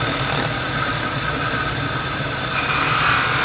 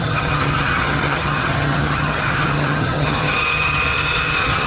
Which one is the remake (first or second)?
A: second